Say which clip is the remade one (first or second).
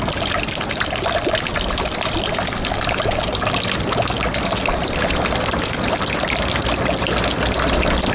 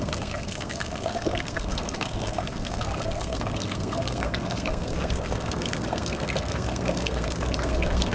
second